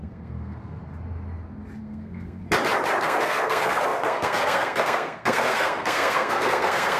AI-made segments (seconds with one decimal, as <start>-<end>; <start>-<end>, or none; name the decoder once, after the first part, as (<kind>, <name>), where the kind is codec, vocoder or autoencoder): 0.0-0.8 (codec, SNAC); 1.8-2.4; 3.0-7.0